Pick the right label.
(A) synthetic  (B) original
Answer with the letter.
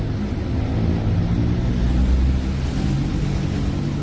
B